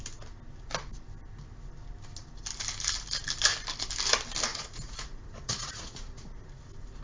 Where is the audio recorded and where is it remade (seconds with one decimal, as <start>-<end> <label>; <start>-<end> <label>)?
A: 0.0-4.5 recorded; 4.5-6.5 remade; 6.5-7.0 recorded